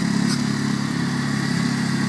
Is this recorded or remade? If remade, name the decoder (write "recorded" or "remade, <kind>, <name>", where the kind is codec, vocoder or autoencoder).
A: recorded